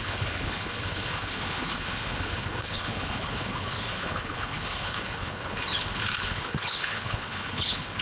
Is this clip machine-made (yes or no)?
yes